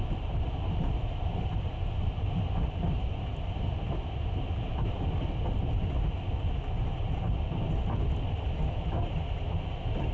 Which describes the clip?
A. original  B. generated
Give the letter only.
A